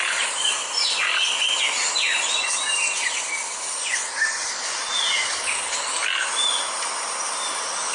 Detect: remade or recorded recorded